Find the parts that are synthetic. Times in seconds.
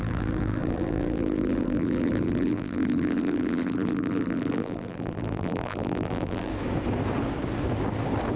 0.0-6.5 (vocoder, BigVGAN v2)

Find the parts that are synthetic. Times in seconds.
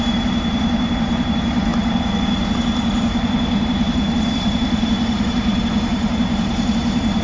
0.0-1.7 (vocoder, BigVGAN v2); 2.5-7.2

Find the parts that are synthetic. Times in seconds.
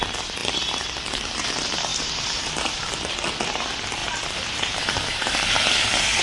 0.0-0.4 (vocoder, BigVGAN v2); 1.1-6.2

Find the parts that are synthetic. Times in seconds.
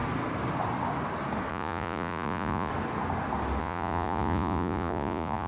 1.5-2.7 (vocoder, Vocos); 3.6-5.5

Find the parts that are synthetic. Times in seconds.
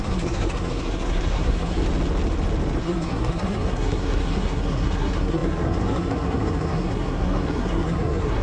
0.0-1.8 (codec, SNAC); 2.8-8.4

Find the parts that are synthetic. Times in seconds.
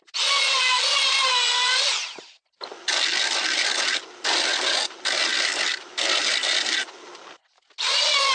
none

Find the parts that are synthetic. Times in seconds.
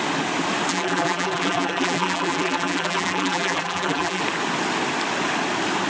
0.7-4.2 (vocoder, BigVGAN v2)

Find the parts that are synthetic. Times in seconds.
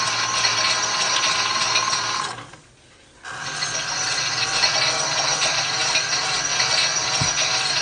0.5-1.1 (vocoder, BigVGAN v2); 5.8-6.6